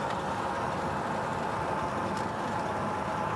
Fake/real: real